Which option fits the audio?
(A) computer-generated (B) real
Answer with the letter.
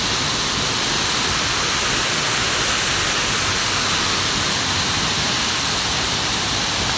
B